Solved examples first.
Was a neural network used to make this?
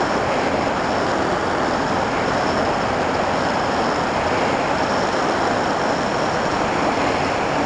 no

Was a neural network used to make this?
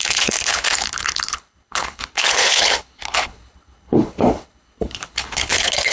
yes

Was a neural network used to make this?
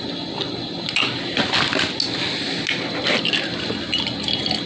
no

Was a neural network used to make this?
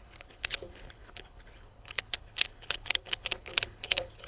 yes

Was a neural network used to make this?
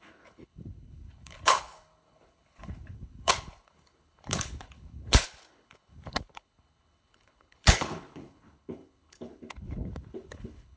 yes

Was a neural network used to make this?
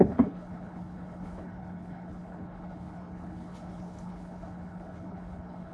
yes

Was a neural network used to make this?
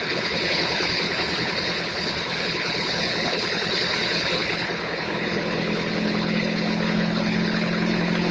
yes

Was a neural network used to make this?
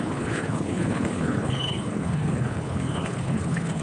yes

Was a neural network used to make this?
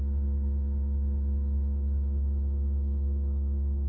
yes